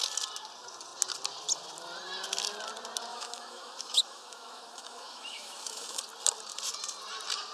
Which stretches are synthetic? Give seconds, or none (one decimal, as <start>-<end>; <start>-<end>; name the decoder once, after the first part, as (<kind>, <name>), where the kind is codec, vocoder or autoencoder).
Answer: 3.1-6.0 (autoencoder, DAC-VAE)